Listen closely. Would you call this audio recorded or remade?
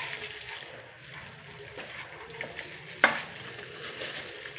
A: recorded